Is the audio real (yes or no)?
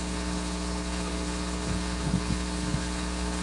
no